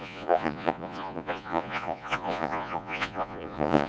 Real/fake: fake